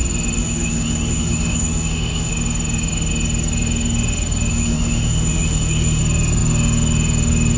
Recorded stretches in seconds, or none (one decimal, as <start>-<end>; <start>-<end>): 0.0-0.4; 2.3-4.5; 6.0-7.6